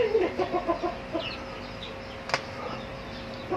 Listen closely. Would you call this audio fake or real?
real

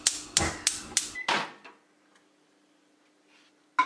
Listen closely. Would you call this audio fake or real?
real